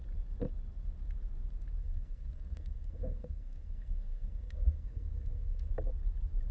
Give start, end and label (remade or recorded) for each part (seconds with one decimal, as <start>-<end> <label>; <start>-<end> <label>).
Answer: 0.0-1.8 recorded; 1.8-5.7 remade; 5.7-6.5 recorded